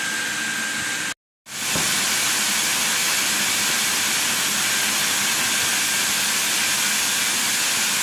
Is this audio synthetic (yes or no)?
no